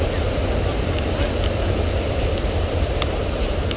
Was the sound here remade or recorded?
recorded